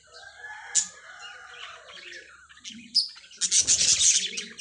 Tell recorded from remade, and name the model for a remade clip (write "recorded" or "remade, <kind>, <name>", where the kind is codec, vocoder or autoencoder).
recorded